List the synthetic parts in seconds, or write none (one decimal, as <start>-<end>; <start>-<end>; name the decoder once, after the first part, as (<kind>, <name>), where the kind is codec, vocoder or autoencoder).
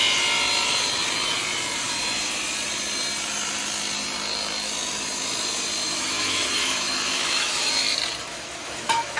5.8-7.7 (autoencoder, DAC-VAE); 8.3-9.2